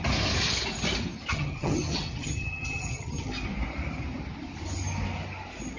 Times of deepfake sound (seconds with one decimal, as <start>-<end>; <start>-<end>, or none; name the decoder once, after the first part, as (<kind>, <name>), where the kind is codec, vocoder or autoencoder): 1.3-3.3 (vocoder, HiFi-GAN)